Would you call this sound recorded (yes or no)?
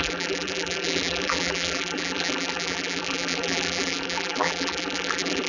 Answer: no